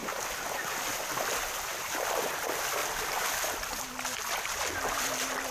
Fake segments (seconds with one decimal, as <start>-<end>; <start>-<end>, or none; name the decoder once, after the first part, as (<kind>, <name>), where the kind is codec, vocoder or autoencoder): none